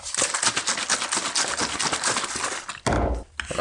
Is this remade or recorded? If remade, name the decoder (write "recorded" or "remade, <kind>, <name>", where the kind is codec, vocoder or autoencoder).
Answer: recorded